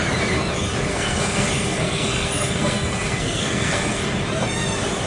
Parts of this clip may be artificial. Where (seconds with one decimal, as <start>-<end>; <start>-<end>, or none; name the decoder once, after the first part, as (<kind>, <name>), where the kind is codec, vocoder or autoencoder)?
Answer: 0.9-4.0 (codec, SNAC)